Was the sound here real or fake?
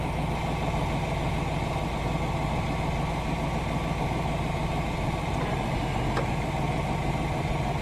real